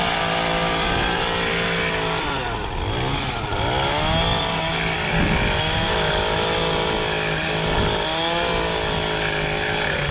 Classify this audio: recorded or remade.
recorded